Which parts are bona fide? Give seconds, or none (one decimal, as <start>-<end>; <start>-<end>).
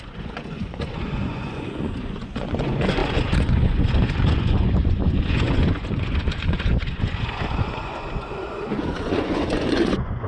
none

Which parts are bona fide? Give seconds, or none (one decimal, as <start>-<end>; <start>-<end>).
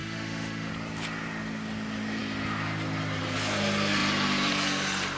0.7-5.2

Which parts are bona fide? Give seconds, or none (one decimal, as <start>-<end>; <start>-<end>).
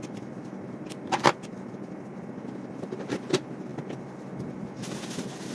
0.0-5.5